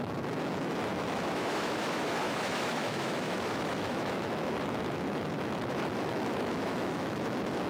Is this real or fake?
fake